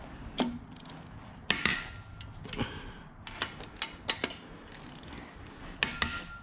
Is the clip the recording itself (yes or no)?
yes